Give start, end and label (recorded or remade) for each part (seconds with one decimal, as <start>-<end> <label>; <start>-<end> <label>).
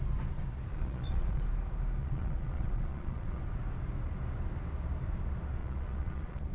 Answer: 0.0-0.7 recorded; 0.7-1.4 remade; 1.4-2.0 recorded; 2.0-3.4 remade; 3.4-5.6 recorded; 5.6-6.5 remade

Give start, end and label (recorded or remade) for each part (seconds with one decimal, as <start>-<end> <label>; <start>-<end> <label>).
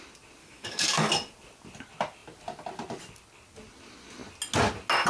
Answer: 0.0-0.4 recorded; 0.4-1.1 remade; 1.1-5.1 recorded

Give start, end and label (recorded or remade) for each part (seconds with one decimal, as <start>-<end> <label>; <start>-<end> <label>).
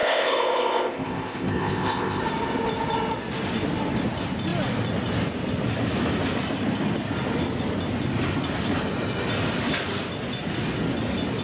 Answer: 0.0-2.2 remade; 2.2-11.4 recorded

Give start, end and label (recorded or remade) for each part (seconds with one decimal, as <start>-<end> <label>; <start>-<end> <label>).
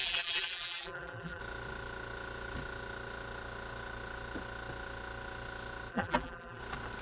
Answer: 0.0-1.4 remade; 1.4-5.9 recorded; 5.9-6.6 remade; 6.6-7.0 recorded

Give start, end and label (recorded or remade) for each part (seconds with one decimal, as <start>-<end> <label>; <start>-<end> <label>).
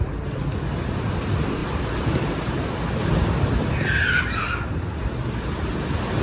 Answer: 0.0-6.2 recorded